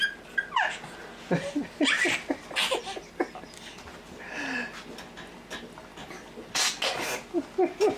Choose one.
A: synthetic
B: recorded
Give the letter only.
B